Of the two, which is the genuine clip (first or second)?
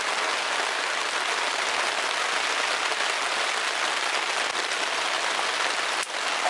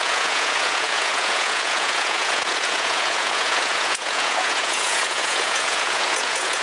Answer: first